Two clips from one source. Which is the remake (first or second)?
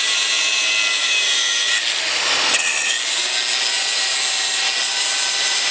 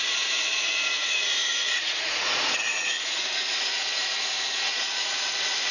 second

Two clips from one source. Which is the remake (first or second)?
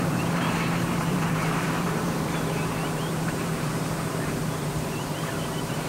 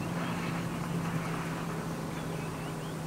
first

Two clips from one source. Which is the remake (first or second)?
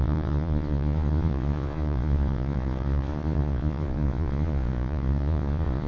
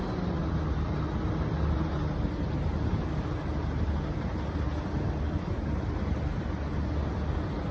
first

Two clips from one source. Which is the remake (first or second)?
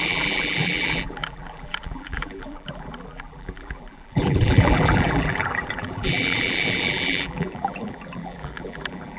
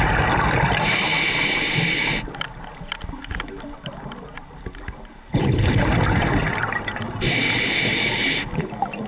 first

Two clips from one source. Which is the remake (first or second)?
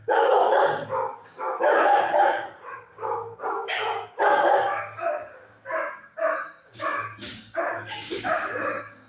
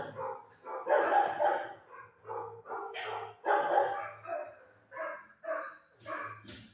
first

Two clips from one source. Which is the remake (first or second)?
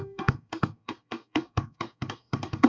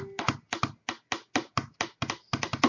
first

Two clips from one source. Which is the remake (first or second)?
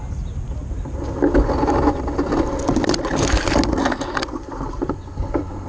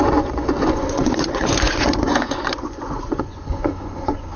second